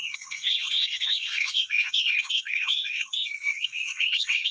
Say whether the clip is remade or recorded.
remade